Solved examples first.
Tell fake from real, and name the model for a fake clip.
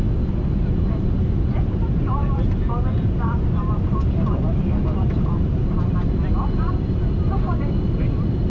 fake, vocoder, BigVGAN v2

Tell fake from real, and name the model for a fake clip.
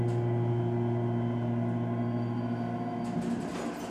real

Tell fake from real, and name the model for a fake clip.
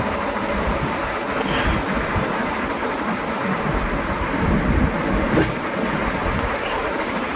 real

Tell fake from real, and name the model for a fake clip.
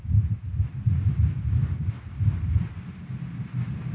real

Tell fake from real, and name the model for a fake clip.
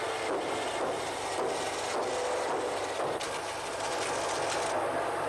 real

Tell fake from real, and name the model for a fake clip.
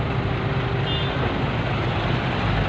real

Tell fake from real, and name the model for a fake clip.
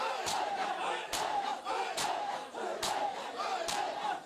fake, vocoder, BigVGAN v2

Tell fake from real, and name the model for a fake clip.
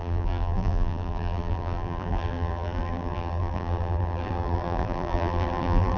fake, vocoder, BigVGAN v2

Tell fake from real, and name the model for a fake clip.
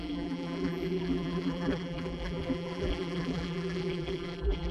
fake, vocoder, BigVGAN v2